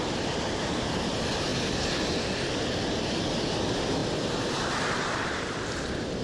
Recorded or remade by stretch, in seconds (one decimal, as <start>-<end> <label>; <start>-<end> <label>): 0.0-6.2 remade